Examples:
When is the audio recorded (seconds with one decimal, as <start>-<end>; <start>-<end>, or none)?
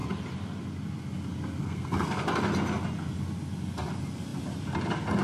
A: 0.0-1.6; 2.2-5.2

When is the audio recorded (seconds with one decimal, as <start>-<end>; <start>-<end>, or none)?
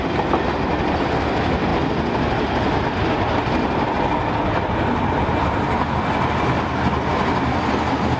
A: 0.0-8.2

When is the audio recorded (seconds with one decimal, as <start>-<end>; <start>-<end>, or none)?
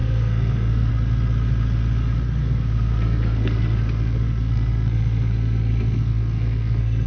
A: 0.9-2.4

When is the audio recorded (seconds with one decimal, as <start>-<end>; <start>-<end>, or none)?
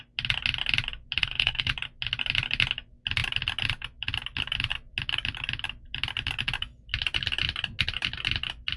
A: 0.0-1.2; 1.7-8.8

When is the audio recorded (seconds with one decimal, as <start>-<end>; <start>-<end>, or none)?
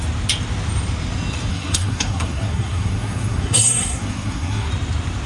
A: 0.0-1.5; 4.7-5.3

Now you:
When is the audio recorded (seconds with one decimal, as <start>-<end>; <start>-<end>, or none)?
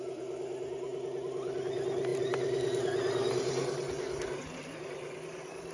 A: 0.0-5.7